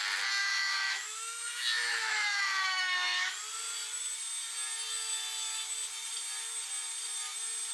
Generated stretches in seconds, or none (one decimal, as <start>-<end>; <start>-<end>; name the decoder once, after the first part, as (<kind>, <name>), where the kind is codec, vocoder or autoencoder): 0.4-3.3 (autoencoder, DAC-VAE)

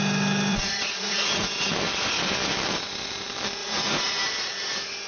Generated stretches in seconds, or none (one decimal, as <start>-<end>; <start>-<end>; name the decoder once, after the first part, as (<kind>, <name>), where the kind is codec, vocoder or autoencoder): 0.5-1.5 (vocoder, Vocos); 3.6-4.2

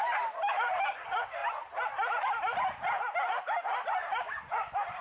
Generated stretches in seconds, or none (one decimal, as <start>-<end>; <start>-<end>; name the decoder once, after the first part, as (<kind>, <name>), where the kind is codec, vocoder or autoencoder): none

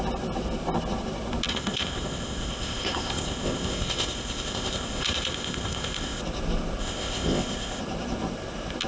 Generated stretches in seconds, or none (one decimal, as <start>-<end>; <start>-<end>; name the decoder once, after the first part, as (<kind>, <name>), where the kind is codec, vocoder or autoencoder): 1.5-6.2 (codec, ZipCodec); 6.8-7.8

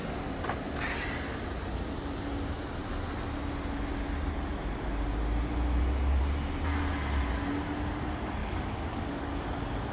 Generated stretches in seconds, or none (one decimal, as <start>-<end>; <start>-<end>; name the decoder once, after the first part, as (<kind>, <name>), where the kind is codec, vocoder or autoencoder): 8.4-9.3 (codec, DAC)

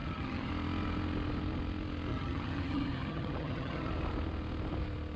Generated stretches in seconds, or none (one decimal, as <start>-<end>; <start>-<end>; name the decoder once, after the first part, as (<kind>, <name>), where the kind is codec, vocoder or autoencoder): 0.0-0.5 (vocoder, HiFi-GAN); 2.1-3.9

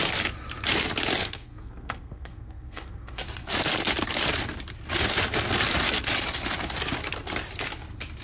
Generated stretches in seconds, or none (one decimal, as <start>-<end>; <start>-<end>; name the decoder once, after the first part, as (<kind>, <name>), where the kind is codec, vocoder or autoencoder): 1.2-3.2 (codec, SNAC)